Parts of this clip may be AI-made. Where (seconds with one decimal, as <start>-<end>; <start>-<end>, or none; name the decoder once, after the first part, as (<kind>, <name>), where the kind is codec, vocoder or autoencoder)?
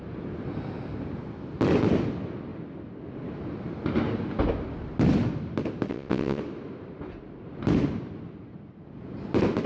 5.9-6.4 (vocoder, WaveNeXt)